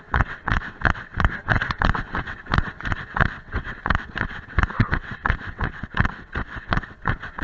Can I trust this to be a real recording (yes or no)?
no